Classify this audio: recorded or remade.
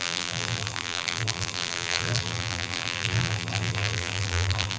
remade